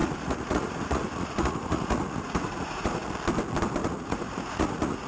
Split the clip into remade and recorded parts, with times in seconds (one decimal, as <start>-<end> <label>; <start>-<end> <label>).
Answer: 0.0-3.1 remade; 3.1-3.8 recorded; 3.8-5.1 remade